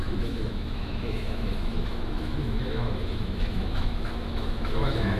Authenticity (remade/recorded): remade